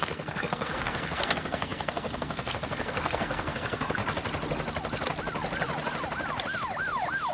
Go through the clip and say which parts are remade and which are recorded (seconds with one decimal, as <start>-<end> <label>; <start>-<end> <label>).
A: 0.0-4.0 remade; 4.0-7.3 recorded